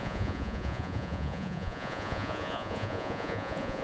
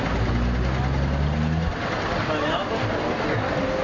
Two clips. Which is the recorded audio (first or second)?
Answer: second